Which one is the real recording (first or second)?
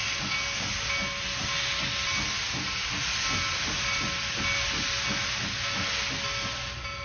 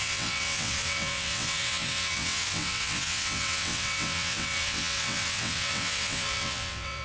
first